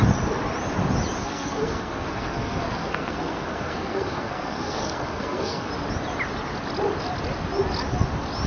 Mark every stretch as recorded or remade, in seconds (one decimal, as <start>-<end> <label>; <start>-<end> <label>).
0.0-1.2 recorded; 1.2-5.7 remade; 5.7-8.5 recorded